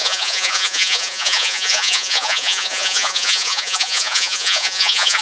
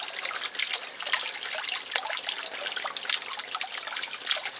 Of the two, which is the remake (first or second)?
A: first